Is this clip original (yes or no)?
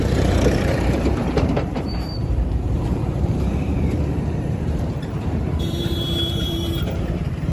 no